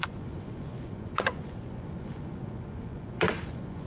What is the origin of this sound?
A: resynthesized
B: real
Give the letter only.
A